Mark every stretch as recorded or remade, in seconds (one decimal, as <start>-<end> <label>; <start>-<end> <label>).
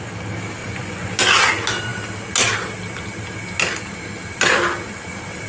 0.0-0.6 recorded; 0.6-1.1 remade; 1.1-5.5 recorded